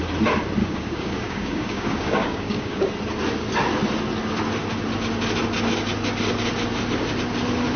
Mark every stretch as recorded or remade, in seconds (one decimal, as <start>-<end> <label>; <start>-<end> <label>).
0.0-0.6 recorded; 0.6-2.9 remade; 2.9-7.8 recorded